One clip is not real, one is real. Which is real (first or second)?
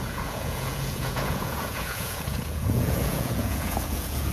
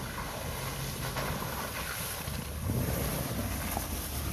second